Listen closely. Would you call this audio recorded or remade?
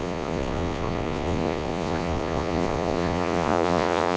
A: remade